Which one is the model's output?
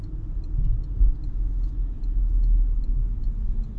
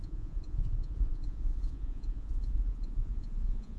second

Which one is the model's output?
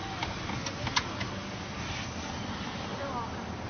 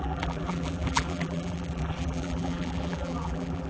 second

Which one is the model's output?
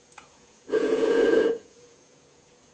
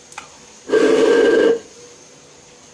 first